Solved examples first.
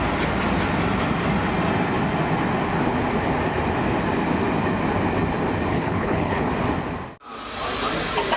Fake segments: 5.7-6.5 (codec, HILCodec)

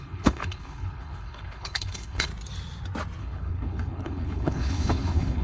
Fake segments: 0.0-2.3 (codec, HILCodec); 3.2-5.4

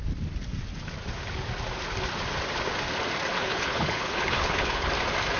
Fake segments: 3.3-4.9 (codec, HILCodec)

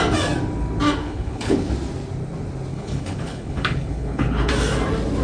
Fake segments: 1.0-1.7 (codec, HILCodec); 2.7-4.5

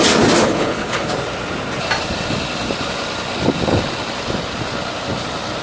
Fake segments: 0.4-1.2 (codec, HILCodec)

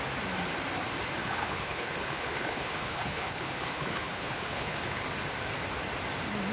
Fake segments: 1.2-5.0 (codec, HILCodec)

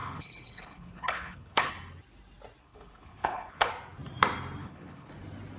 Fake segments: 0.0-1.7 (codec, HILCodec); 2.6-3.7; 4.6-5.1

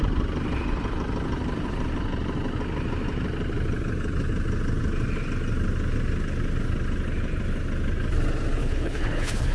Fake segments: 8.6-9.5 (codec, HILCodec)